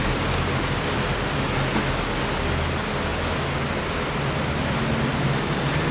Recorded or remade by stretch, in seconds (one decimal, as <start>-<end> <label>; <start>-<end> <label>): 0.0-5.9 recorded